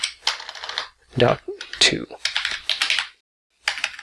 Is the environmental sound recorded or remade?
recorded